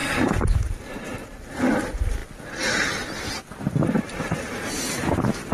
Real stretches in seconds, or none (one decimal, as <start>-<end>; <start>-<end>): 0.0-5.5